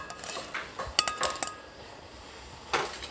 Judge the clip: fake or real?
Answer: real